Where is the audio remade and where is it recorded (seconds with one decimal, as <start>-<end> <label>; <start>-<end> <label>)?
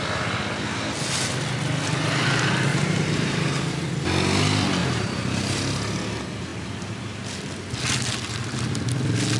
0.0-2.7 recorded; 2.7-3.9 remade; 3.9-4.8 recorded; 4.8-5.6 remade; 5.6-9.4 recorded